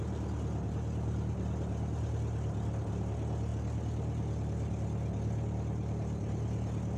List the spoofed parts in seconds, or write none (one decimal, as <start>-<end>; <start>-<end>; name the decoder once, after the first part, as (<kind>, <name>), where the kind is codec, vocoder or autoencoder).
none